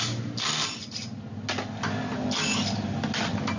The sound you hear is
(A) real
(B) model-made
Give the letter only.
A